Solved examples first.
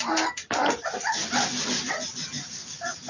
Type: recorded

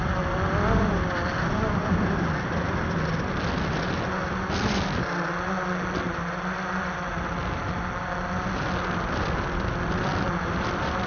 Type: recorded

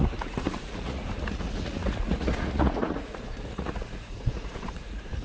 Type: remade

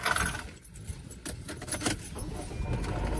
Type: recorded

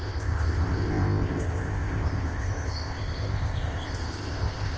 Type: remade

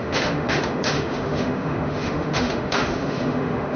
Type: remade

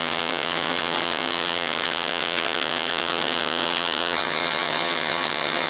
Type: remade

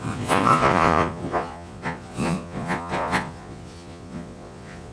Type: remade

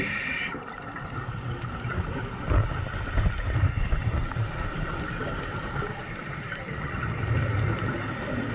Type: remade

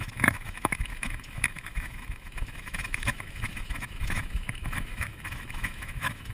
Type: remade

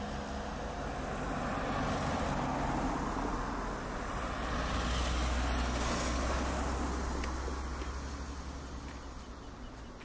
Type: recorded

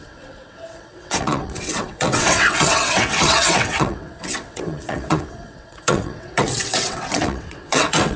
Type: remade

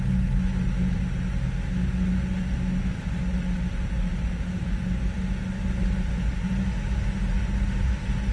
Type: recorded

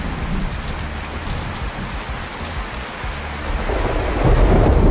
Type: recorded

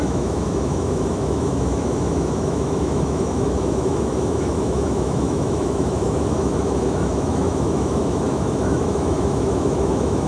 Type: remade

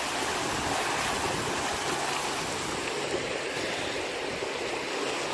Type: recorded